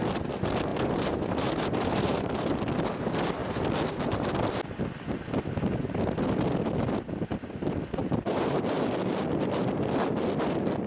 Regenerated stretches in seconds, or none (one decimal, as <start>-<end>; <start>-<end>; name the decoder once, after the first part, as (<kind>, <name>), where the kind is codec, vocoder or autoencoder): 0.7-2.6 (vocoder, BigVGAN v2); 8.0-8.6